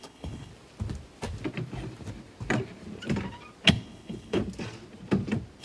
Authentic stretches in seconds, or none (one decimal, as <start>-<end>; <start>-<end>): 0.5-3.7; 4.4-5.6